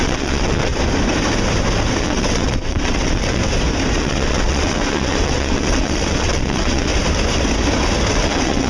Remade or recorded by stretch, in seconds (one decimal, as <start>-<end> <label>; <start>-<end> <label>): 0.0-0.7 remade; 0.7-2.0 recorded; 2.0-3.4 remade; 3.4-4.0 recorded; 4.0-6.9 remade; 6.9-8.1 recorded; 8.1-8.7 remade